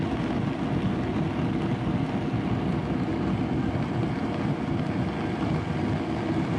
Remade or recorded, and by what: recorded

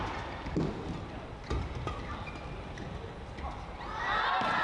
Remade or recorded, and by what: recorded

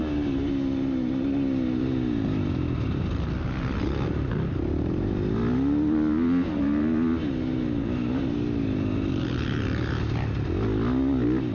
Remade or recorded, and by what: recorded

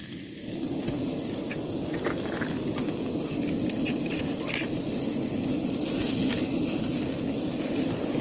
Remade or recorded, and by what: recorded